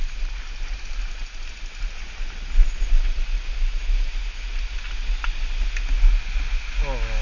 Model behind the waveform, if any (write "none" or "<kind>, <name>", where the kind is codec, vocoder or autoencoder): none